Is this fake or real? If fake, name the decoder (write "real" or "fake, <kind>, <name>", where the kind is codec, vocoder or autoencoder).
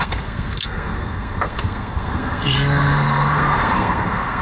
fake, codec, SNAC